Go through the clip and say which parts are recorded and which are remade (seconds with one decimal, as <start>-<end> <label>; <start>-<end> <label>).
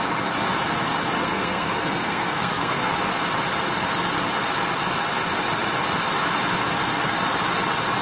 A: 0.0-1.2 recorded; 1.2-2.9 remade; 2.9-8.0 recorded